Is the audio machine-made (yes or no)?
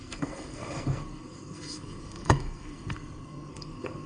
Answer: yes